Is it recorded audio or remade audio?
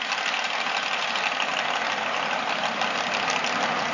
recorded